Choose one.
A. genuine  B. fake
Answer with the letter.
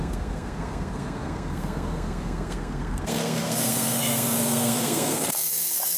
B